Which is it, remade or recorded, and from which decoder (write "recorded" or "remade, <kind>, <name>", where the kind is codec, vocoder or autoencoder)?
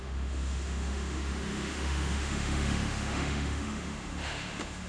remade, autoencoder, DAC-VAE